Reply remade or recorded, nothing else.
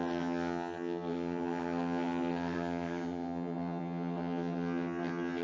remade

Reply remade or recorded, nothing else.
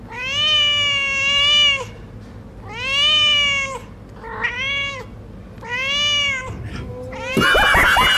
recorded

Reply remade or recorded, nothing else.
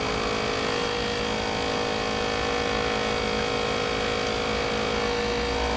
recorded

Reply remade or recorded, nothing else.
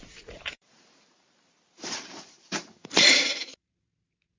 remade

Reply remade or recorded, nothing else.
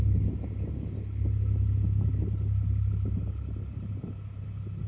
recorded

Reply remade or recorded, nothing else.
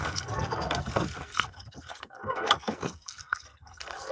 remade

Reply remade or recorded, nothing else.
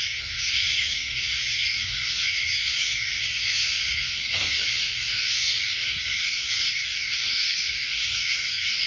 remade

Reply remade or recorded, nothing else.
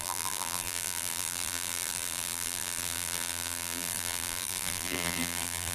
remade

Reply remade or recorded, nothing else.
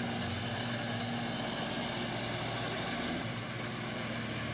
recorded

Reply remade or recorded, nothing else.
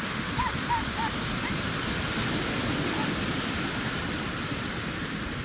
recorded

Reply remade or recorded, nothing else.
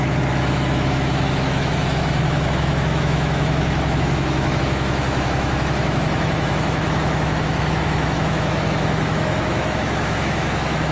remade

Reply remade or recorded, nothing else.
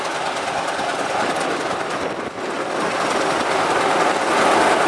recorded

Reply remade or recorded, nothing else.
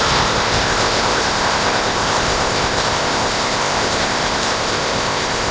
remade